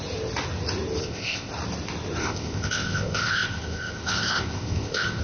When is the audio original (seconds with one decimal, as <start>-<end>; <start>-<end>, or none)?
0.0-1.0; 1.5-2.2